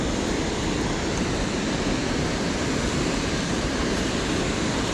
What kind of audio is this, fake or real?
fake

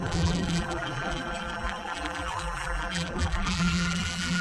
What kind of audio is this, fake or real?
fake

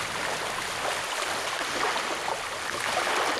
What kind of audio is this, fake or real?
real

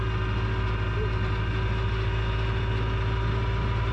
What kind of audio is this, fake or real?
real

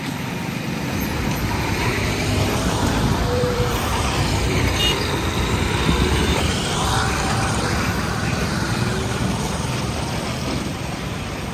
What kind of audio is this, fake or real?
fake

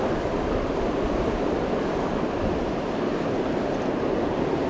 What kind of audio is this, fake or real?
real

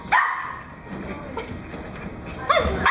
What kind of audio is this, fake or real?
real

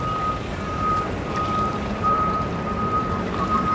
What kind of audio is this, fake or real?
fake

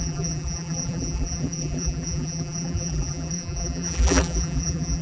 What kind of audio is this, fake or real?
fake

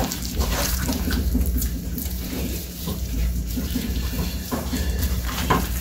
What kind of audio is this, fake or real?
fake